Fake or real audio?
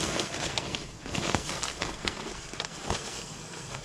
fake